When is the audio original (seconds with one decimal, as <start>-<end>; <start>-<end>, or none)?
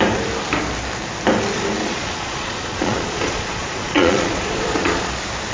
0.0-1.8; 5.1-5.5